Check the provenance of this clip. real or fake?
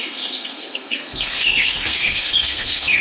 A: fake